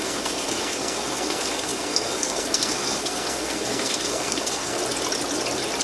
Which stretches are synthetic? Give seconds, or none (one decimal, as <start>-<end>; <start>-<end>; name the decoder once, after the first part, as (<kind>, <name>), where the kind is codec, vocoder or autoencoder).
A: 0.0-4.8 (codec, SNAC)